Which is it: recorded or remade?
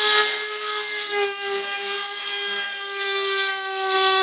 remade